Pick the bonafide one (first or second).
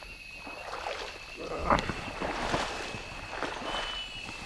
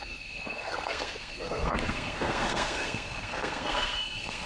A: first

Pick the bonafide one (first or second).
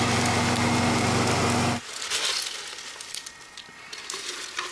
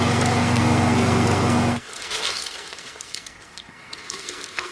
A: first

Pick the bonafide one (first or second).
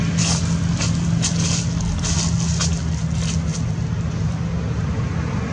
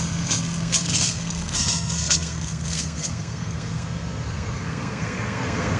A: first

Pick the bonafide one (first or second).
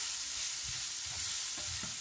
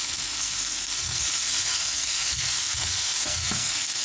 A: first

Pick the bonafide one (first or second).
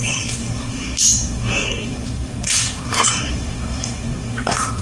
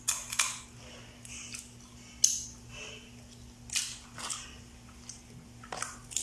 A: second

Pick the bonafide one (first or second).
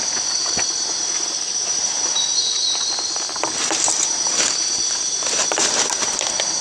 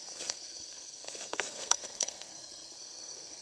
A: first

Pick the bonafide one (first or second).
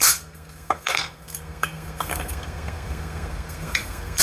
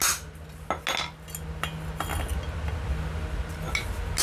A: second